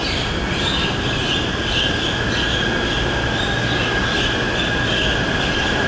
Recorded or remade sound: recorded